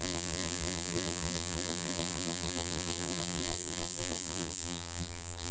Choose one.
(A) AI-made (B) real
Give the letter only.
A